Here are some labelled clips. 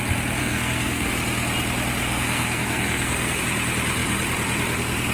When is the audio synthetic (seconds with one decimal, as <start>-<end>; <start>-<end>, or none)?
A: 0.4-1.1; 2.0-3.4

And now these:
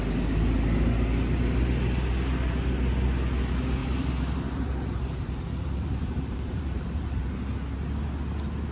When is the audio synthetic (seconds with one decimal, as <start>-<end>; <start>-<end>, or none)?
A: 3.8-7.2

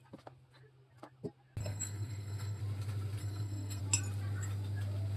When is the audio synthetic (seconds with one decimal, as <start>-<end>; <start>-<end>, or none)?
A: 1.6-2.6; 3.2-3.8